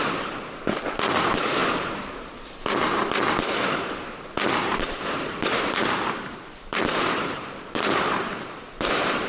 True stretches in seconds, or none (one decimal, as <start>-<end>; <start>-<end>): 0.0-1.6; 2.3-4.6